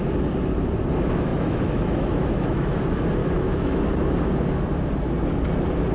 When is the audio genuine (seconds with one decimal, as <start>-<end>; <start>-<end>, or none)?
0.0-1.3; 2.8-3.2; 3.8-5.9